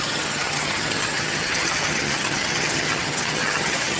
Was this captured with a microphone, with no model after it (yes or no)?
no